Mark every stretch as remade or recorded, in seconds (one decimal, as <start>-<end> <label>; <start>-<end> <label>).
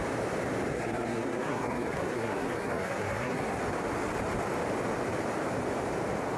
0.0-0.7 recorded; 0.7-3.6 remade; 3.6-6.4 recorded